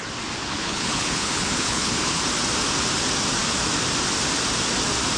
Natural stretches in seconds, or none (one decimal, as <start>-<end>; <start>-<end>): 0.0-0.4; 2.2-5.2